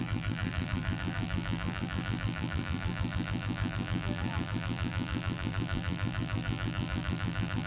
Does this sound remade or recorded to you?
remade